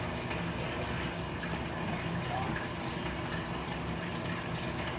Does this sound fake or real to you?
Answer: real